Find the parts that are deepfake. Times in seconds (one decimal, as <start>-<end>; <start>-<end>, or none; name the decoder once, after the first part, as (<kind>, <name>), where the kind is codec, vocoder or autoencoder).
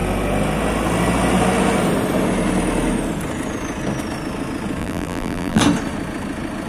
4.8-5.6 (vocoder, BigVGAN v2)